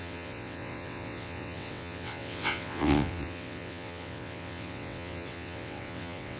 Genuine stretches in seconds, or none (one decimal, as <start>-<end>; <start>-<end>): none